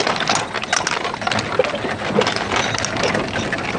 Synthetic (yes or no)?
no